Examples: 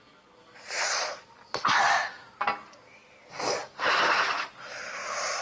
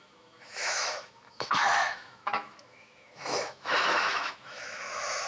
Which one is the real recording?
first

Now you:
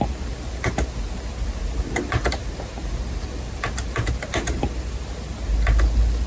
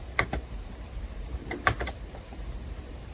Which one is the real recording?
first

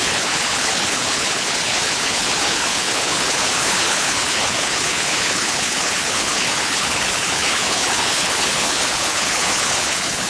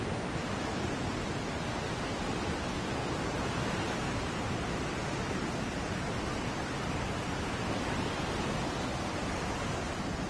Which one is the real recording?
second